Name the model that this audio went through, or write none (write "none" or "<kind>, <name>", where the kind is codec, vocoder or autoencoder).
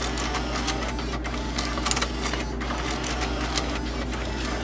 none